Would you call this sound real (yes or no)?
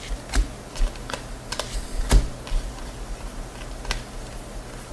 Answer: yes